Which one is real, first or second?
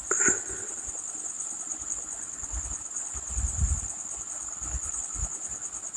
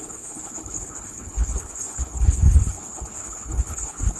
first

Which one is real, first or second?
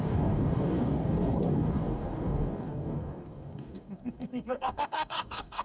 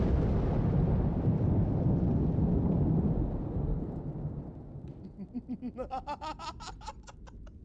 second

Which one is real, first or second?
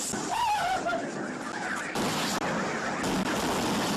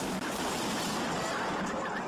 first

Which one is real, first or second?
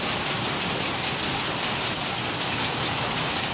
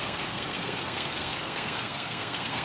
first